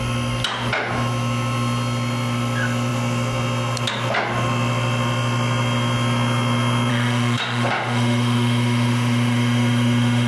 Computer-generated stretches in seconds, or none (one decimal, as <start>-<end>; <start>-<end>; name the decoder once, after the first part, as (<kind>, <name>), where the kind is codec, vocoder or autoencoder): 6.9-10.3 (autoencoder, DAC-VAE)